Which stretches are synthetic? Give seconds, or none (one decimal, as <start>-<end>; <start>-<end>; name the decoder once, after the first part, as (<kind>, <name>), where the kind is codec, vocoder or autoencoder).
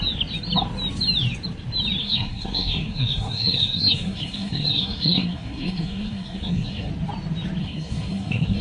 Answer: 2.0-6.9 (codec, SNAC); 7.6-8.6